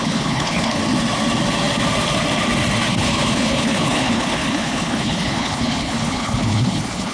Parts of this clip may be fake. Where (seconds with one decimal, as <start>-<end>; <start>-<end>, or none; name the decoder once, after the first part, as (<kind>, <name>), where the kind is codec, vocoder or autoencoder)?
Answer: 0.0-0.8 (codec, HILCodec); 2.9-7.1